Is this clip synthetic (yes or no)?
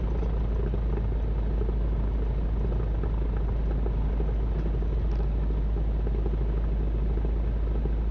no